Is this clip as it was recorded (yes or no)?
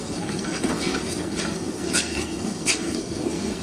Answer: no